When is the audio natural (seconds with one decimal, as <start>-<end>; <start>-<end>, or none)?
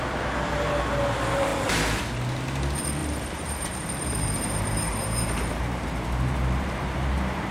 0.0-3.0